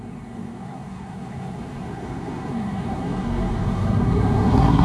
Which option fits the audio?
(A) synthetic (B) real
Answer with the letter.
A